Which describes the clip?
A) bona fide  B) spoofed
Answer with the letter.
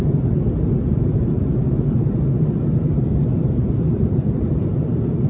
B